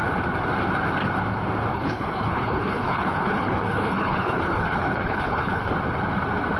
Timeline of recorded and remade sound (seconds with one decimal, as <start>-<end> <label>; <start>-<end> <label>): 0.0-1.7 recorded; 1.7-5.7 remade; 5.7-6.6 recorded